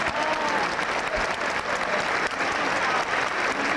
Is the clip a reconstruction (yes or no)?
no